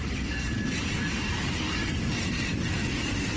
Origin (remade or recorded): recorded